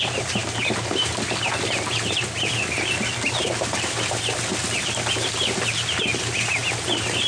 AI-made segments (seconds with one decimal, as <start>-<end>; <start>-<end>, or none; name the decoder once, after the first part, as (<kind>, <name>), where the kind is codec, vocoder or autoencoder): none